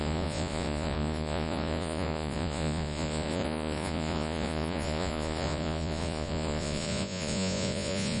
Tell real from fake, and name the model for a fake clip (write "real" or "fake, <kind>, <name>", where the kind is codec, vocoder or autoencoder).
fake, vocoder, Vocos